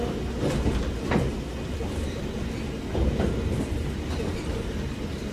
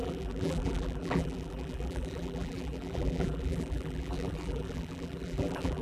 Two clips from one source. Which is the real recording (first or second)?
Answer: first